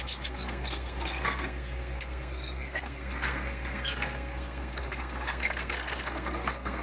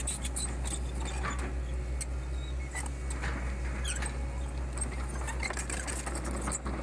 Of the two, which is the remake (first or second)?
first